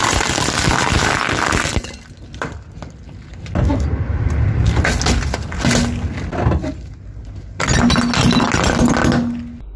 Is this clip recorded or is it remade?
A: recorded